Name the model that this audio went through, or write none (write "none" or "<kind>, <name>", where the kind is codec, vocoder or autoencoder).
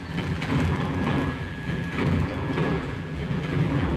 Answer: vocoder, BigVGAN v2